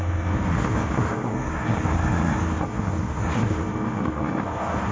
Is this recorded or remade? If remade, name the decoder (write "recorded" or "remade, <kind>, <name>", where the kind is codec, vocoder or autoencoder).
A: remade, codec, SNAC